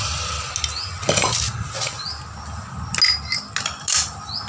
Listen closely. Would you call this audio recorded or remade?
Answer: recorded